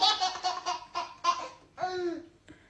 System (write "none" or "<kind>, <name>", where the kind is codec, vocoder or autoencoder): none